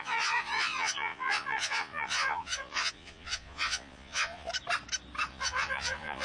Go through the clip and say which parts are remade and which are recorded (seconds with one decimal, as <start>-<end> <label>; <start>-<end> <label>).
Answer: 0.0-4.5 remade; 4.5-5.3 recorded; 5.3-6.2 remade